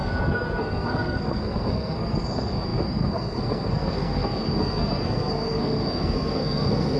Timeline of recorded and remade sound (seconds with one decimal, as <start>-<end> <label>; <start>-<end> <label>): 0.0-7.0 remade